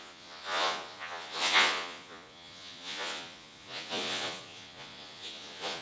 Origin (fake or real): fake